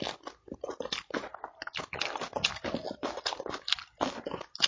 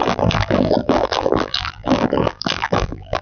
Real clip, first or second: first